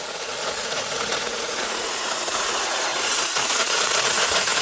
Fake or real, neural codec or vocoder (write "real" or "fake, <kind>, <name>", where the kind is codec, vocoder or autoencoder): fake, vocoder, Vocos